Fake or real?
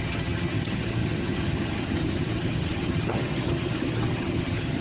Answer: fake